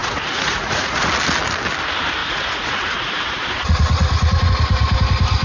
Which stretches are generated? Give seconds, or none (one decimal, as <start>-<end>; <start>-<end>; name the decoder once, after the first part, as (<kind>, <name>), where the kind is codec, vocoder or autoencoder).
0.0-1.1 (vocoder, Vocos); 2.2-4.5